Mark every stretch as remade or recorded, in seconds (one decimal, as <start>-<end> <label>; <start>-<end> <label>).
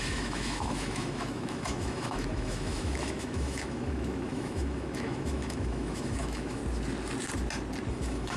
0.0-6.6 remade; 6.6-7.9 recorded; 7.9-8.4 remade